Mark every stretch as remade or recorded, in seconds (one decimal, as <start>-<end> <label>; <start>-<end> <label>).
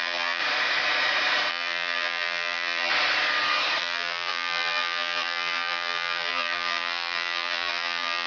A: 0.0-0.4 remade; 0.4-1.5 recorded; 1.5-2.9 remade; 2.9-3.8 recorded; 3.8-8.3 remade